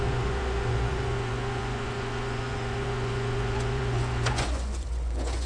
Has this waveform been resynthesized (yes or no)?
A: yes